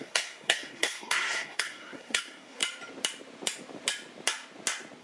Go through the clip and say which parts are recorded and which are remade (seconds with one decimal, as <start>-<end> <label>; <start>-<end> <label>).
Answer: 0.0-2.6 remade; 2.6-5.0 recorded